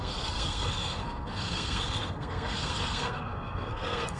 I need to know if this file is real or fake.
fake